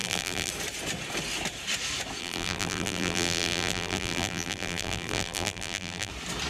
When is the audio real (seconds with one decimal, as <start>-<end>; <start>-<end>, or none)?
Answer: 0.5-2.2; 6.1-6.5